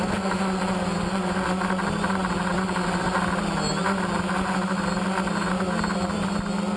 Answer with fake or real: real